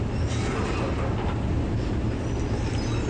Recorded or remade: recorded